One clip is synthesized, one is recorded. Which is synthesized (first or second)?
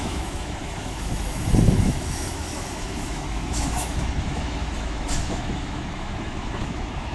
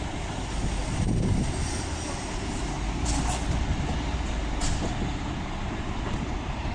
first